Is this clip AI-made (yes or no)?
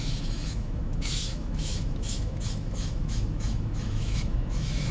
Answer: yes